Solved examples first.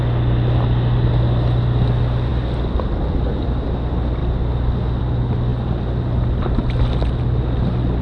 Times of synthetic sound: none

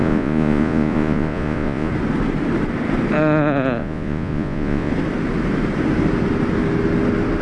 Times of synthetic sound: 0.0-1.9 (vocoder, Vocos); 3.8-4.9

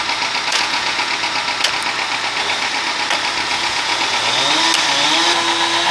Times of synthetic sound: 0.5-1.1 (vocoder, Vocos); 3.5-4.0

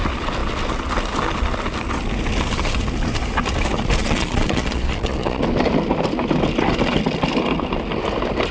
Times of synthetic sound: 4.0-5.4 (vocoder, Vocos)

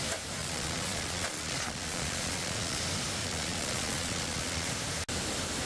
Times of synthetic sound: 0.4-2.8 (vocoder, Vocos); 3.2-4.7